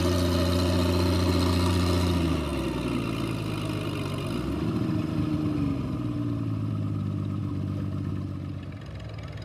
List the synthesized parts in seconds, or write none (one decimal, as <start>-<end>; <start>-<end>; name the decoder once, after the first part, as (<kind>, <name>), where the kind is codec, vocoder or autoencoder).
none